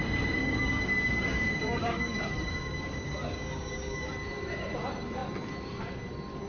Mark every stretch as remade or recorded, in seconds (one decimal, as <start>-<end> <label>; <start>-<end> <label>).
0.0-0.4 recorded; 0.4-4.1 remade; 4.1-6.5 recorded